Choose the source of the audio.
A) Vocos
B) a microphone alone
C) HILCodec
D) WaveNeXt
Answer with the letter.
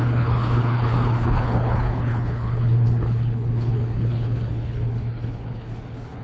C